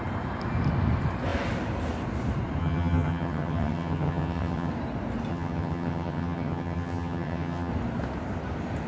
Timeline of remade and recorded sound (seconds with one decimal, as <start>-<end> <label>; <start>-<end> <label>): 0.0-2.6 recorded; 2.6-4.7 remade; 4.7-5.3 recorded; 5.3-7.7 remade; 7.7-8.9 recorded